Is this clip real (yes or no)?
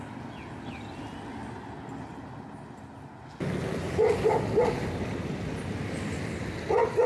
yes